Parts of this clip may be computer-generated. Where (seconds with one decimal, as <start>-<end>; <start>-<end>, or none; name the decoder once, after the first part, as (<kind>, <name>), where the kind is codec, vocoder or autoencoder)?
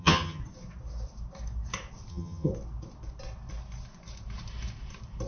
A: 0.0-0.4 (vocoder, HiFi-GAN); 2.1-2.5